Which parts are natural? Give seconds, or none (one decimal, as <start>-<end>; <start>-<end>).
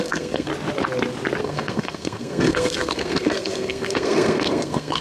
0.5-1.4